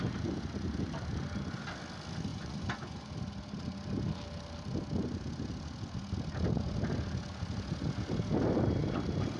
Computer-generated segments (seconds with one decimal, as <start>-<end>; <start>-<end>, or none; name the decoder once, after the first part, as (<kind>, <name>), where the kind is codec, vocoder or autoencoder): 2.3-3.1 (vocoder, Vocos)